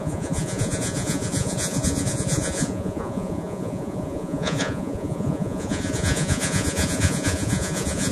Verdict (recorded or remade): remade